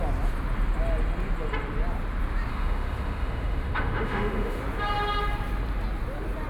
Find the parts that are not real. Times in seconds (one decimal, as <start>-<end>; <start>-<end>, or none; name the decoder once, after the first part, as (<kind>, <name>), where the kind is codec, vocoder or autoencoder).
2.5-4.6 (autoencoder, DAC-VAE)